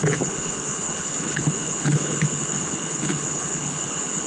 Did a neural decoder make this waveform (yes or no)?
yes